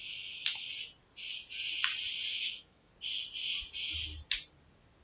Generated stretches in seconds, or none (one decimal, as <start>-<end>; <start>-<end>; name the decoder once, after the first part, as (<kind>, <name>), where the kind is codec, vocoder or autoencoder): 0.0-0.7 (autoencoder, DAC-VAE); 2.3-2.9